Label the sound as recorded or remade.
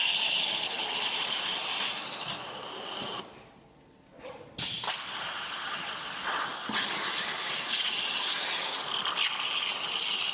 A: recorded